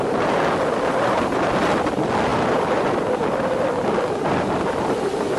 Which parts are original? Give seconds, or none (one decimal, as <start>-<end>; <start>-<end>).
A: 0.0-2.3